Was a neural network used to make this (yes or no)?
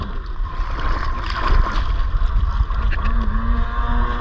no